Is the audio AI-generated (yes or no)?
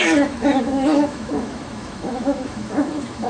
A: yes